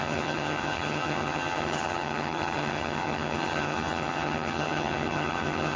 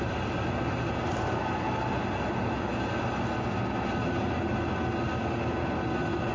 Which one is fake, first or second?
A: first